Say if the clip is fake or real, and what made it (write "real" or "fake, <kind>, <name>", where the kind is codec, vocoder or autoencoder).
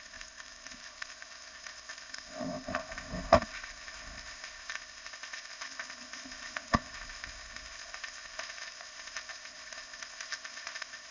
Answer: fake, codec, ZipCodec